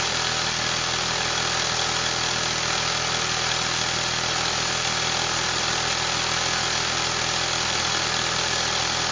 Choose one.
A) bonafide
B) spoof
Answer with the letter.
A